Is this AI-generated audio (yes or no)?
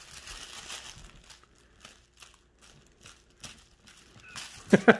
no